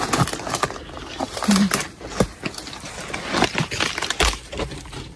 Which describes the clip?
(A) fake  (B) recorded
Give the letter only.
B